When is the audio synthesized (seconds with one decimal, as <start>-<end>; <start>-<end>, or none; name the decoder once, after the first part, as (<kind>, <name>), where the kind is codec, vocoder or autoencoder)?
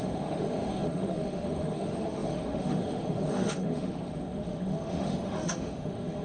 0.0-6.2 (autoencoder, DAC-VAE)